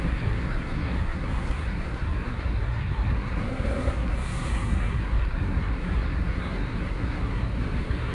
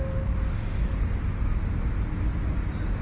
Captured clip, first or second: second